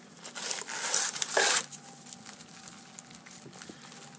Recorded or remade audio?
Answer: recorded